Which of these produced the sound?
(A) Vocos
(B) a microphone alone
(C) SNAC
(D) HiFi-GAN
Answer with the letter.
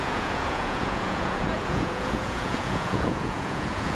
A